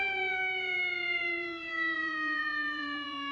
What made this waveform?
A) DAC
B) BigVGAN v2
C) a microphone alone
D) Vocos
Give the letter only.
D